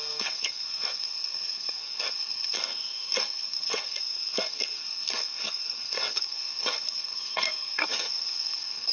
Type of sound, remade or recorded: remade